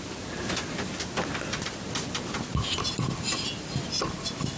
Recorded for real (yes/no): yes